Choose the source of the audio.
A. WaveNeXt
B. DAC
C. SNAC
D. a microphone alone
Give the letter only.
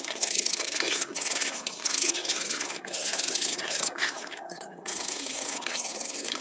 C